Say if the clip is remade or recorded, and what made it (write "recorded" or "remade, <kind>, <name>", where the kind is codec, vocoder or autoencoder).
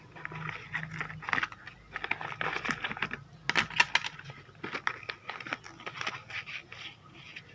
recorded